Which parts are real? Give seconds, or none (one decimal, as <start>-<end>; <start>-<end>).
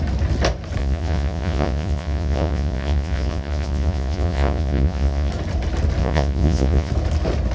0.0-0.8; 5.3-6.0; 6.9-7.5